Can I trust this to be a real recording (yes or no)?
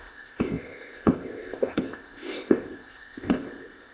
no